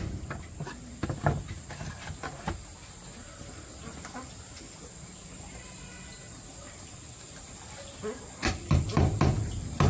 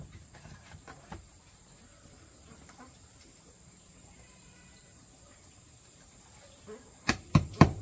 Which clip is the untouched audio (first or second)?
first